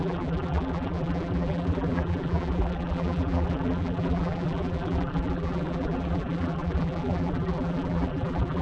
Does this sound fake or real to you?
fake